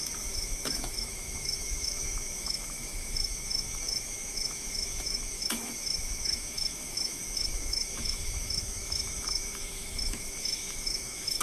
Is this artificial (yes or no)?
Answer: yes